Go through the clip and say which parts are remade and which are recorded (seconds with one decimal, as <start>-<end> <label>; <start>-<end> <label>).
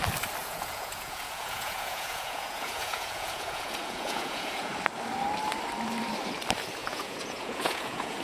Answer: 0.0-0.4 recorded; 0.4-4.7 remade; 4.7-6.8 recorded; 6.8-8.2 remade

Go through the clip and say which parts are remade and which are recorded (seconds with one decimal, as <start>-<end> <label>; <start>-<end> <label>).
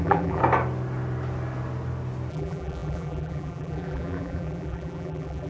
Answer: 0.0-0.4 remade; 0.4-2.3 recorded; 2.3-5.5 remade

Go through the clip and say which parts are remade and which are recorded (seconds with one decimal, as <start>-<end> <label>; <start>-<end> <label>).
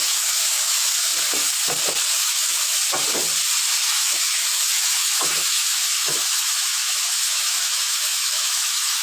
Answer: 0.0-1.1 remade; 1.1-2.1 recorded; 2.1-2.8 remade; 2.8-3.8 recorded; 3.8-9.0 remade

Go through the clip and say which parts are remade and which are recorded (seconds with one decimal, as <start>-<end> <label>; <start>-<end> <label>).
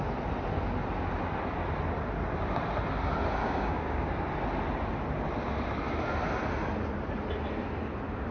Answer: 0.0-3.4 recorded; 3.4-4.1 remade; 4.1-8.3 recorded